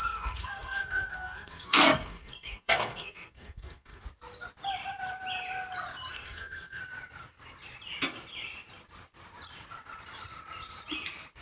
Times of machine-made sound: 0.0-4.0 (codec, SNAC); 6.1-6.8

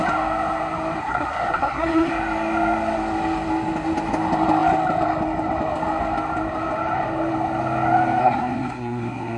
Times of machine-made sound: 1.0-2.1 (codec, SNAC); 8.2-9.4

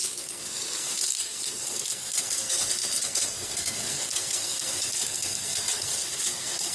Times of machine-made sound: 0.0-6.7 (codec, SNAC)

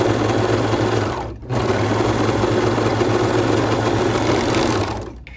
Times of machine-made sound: none

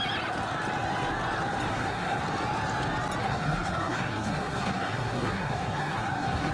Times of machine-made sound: 1.7-2.2 (codec, SNAC); 3.2-6.5

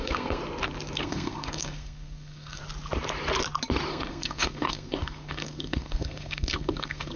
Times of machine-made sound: 0.0-0.4 (codec, SNAC); 1.0-2.6; 3.9-7.2

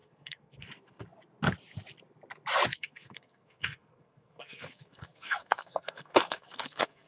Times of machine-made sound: 0.0-0.7 (codec, SNAC); 2.7-7.1

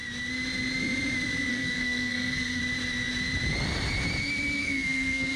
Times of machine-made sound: 1.5-2.6 (codec, SNAC); 4.6-5.4